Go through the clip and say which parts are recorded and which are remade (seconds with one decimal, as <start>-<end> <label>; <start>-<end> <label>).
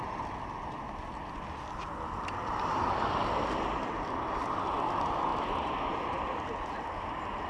0.0-7.5 recorded